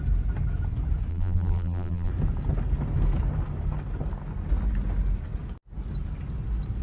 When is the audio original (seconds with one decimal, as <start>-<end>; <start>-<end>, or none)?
0.0-1.1; 2.1-6.8